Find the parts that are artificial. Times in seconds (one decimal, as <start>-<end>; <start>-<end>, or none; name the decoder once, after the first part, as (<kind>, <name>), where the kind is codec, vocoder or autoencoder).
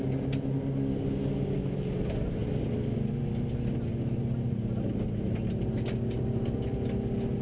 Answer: none